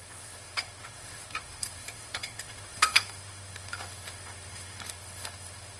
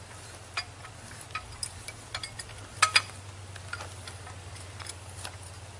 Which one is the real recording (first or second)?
second